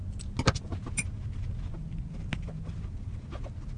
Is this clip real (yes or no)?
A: yes